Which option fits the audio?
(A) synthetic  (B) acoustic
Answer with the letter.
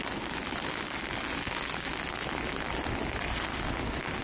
B